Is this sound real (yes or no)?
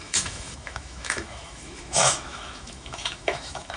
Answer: no